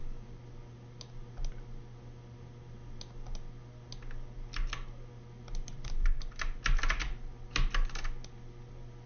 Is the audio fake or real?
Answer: real